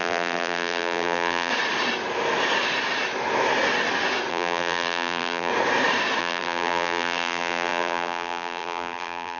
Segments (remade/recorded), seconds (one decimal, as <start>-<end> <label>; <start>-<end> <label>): 0.0-1.5 remade; 1.5-4.3 recorded; 4.3-5.5 remade; 5.5-6.2 recorded; 6.2-9.4 remade